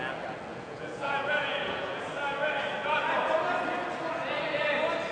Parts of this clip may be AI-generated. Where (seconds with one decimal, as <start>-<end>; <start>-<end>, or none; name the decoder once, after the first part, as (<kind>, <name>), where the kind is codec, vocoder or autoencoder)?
0.5-2.0 (vocoder, Vocos)